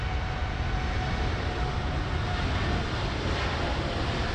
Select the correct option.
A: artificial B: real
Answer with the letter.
B